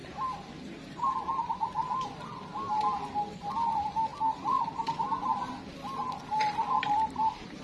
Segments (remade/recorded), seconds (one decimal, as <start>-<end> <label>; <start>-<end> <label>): 0.0-7.6 recorded

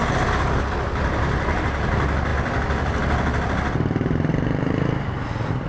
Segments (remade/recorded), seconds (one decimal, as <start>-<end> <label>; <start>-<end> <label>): 0.0-5.7 recorded